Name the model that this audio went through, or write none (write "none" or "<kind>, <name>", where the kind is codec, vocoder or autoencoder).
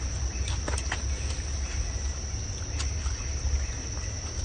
none